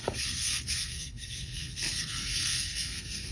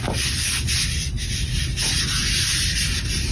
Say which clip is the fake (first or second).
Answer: first